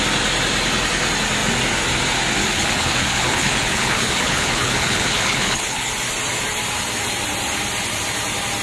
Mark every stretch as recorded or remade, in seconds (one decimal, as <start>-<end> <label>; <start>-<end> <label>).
0.0-2.4 recorded; 2.4-5.9 remade; 5.9-8.6 recorded